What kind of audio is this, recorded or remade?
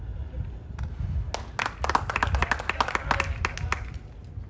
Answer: recorded